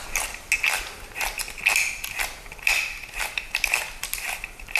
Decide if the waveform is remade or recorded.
recorded